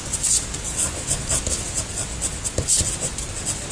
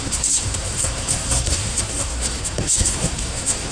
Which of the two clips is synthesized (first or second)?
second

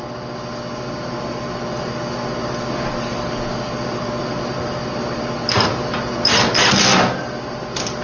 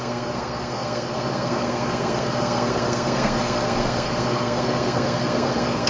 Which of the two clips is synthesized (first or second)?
second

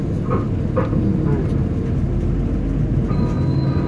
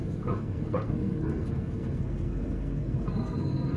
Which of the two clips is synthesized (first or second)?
second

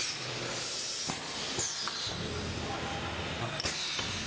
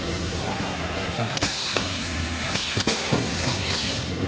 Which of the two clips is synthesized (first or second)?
second